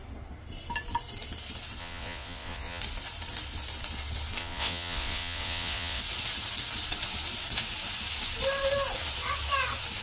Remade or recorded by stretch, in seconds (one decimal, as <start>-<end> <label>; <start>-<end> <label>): 0.0-1.8 recorded; 1.8-2.8 remade; 2.8-4.4 recorded; 4.4-6.0 remade; 6.0-10.0 recorded